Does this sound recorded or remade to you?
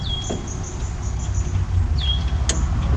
recorded